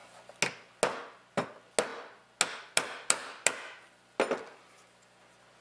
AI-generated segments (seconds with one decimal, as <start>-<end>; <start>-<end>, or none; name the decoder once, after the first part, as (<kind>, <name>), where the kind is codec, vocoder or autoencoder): none